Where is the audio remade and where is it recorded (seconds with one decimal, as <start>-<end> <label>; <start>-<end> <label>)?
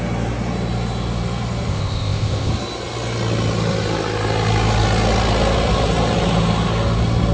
0.0-1.7 recorded; 1.7-2.5 remade; 2.5-7.3 recorded